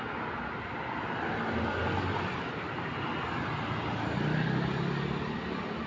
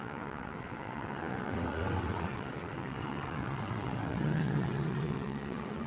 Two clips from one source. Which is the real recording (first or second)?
first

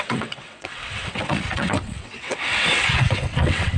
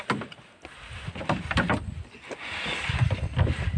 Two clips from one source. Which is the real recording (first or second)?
second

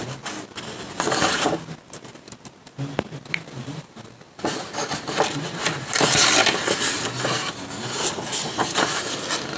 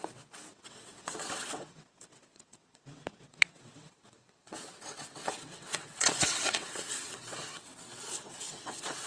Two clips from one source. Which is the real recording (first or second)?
first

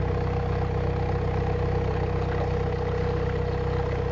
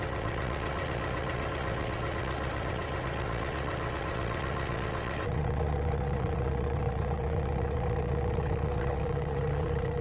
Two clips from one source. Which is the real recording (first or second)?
first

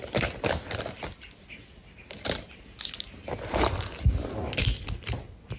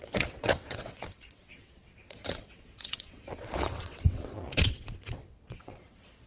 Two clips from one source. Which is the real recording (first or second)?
first